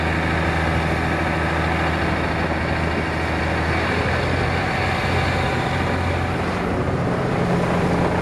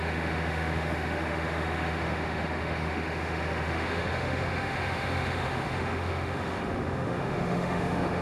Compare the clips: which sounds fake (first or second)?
second